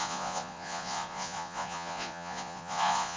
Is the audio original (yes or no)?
no